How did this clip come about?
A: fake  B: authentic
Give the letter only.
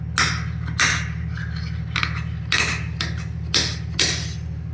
B